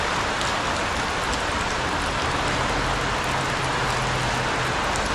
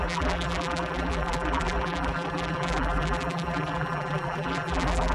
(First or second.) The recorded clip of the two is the first